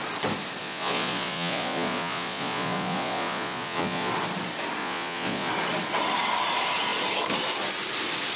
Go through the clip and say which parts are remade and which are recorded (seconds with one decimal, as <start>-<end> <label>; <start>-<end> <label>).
0.0-0.6 recorded; 0.6-4.1 remade; 4.1-4.8 recorded; 4.8-5.5 remade; 5.5-8.4 recorded